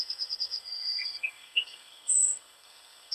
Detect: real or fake fake